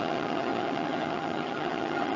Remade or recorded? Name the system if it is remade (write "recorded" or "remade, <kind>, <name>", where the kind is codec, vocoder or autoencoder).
remade, vocoder, HiFi-GAN